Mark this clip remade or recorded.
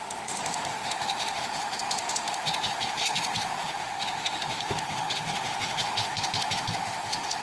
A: remade